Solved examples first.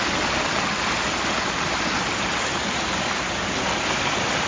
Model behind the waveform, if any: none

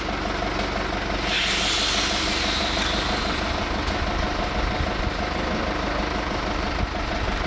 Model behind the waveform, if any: none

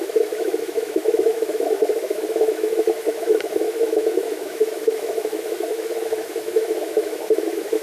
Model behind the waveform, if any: autoencoder, DAC-VAE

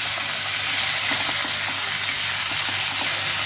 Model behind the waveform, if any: none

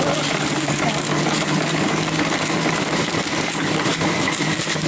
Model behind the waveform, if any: codec, DAC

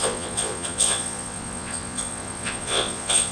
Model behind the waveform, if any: vocoder, Vocos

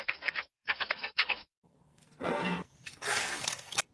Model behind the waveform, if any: codec, SNAC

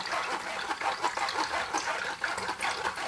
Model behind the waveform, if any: none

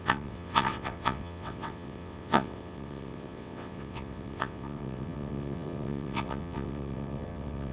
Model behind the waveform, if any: vocoder, WaveNeXt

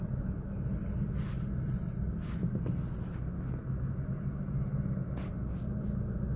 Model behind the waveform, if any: none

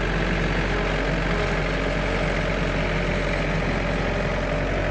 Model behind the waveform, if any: none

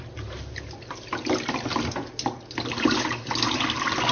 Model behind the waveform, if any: none